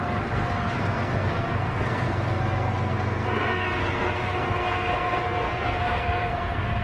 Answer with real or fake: fake